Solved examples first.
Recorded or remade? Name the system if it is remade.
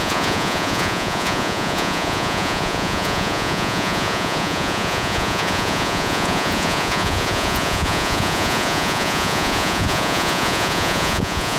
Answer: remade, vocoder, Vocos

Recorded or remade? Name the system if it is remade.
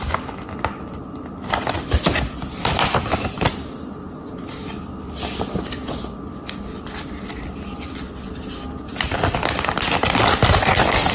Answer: recorded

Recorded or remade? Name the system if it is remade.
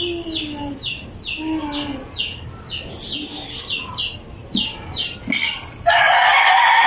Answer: recorded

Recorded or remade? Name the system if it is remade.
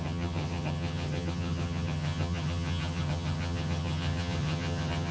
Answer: remade, vocoder, HiFi-GAN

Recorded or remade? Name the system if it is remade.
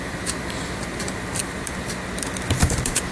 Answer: remade, vocoder, BigVGAN v2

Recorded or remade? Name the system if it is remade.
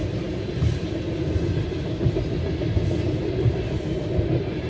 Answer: recorded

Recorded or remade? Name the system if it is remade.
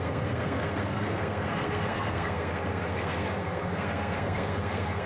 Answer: remade, codec, SNAC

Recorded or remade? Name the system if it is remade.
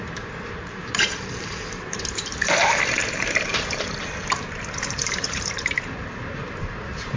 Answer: remade, vocoder, BigVGAN v2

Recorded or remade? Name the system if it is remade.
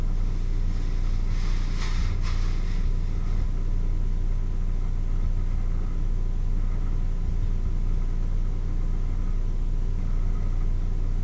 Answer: recorded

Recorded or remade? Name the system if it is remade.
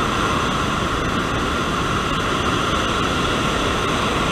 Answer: recorded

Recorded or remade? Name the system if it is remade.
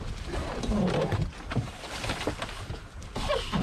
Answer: recorded